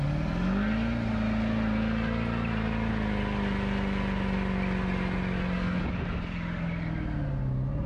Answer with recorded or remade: recorded